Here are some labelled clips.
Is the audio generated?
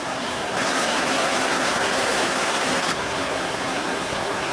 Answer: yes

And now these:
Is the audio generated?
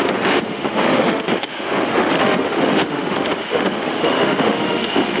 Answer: yes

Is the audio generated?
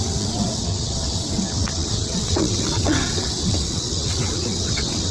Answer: yes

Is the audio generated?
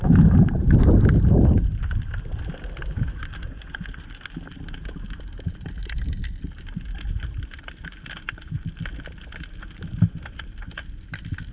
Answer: no